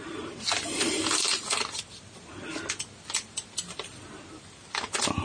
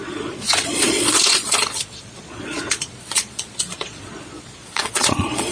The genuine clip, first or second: first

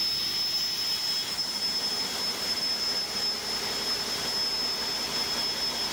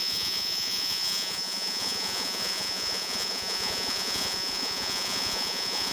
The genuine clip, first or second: first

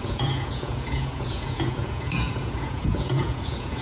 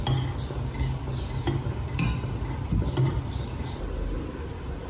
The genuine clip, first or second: second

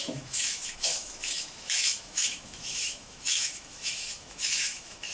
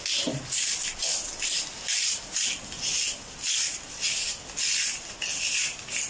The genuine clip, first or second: second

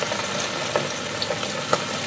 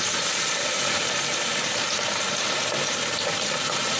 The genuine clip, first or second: first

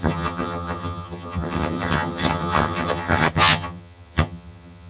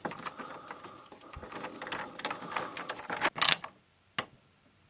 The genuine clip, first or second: second